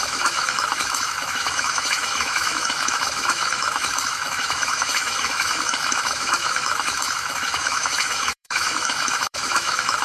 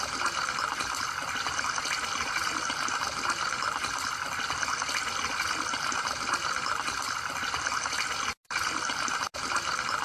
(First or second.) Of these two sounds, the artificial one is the first